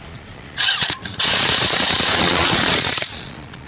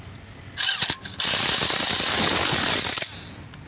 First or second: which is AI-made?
first